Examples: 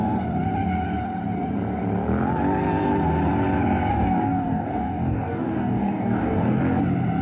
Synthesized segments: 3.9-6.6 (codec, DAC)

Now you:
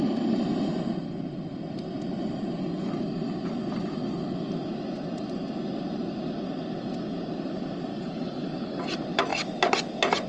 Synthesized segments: 7.9-8.8 (codec, DAC)

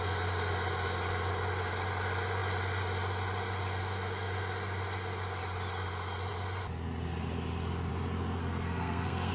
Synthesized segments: 8.4-9.3 (codec, SNAC)

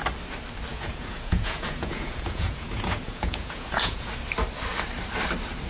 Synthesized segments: 0.7-4.1 (vocoder, Vocos)

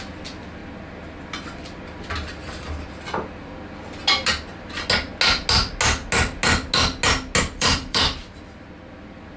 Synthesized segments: 0.0-0.6 (vocoder, BigVGAN v2); 2.3-3.5; 7.4-9.4

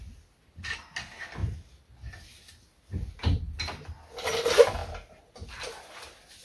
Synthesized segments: none

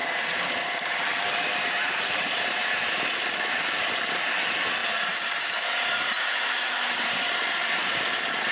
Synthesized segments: 0.0-3.6 (vocoder, BigVGAN v2); 4.8-8.0

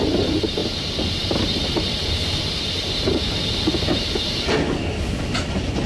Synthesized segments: none